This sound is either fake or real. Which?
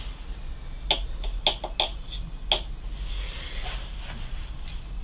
real